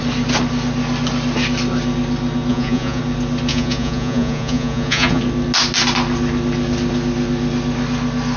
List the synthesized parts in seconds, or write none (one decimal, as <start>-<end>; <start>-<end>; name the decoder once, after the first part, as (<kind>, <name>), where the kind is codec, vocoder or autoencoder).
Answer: 2.5-3.0 (vocoder, Vocos); 3.5-5.2